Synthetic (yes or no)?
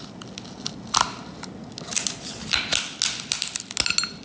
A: no